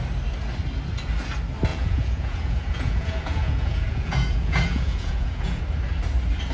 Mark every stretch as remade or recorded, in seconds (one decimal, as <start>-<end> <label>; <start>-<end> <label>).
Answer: 0.0-1.7 recorded; 1.7-5.6 remade; 5.6-6.5 recorded